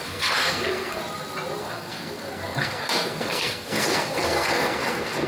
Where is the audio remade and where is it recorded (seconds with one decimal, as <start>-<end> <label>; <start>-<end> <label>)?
0.0-1.0 remade; 1.0-1.6 recorded; 1.6-5.3 remade